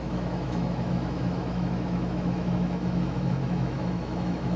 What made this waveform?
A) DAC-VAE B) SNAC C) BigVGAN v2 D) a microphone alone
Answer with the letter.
A